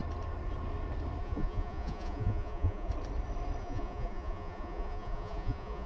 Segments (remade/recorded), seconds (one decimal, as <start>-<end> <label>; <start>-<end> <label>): 0.0-1.2 recorded; 1.2-2.9 remade; 2.9-3.6 recorded; 3.6-5.9 remade